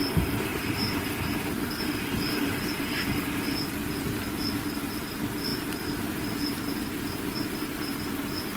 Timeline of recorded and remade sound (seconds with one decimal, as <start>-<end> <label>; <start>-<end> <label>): 0.0-0.5 recorded; 0.5-3.4 remade; 3.4-5.5 recorded; 5.5-6.1 remade; 6.1-8.6 recorded